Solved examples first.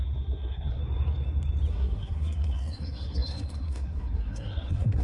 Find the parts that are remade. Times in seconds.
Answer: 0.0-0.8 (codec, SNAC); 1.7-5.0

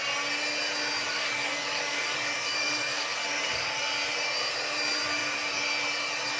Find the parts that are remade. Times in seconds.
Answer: 1.1-3.8 (codec, DAC)

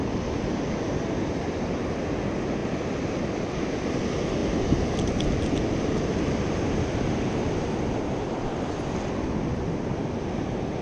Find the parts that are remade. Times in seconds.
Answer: none

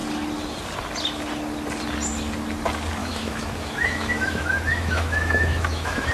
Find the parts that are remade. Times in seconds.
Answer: 3.0-6.1 (autoencoder, DAC-VAE)

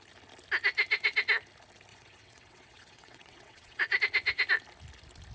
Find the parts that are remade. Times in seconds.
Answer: 1.9-4.0 (vocoder, WaveNeXt)